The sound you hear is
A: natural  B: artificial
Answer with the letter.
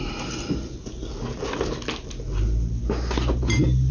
A